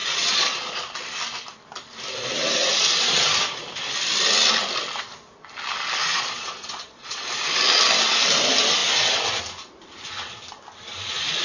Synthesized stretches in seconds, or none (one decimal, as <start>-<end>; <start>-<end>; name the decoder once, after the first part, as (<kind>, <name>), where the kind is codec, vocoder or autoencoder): 0.0-0.8 (vocoder, Vocos); 6.0-7.2